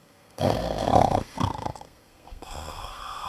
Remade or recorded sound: remade